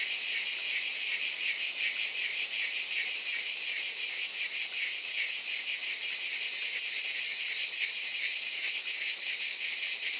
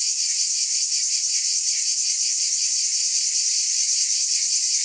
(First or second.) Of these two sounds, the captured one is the first